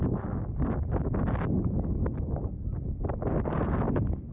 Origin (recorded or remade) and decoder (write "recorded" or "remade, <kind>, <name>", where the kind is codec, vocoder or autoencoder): recorded